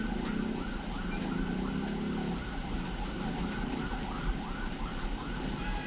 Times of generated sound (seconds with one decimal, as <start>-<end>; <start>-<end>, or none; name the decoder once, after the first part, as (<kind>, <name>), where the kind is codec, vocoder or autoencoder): none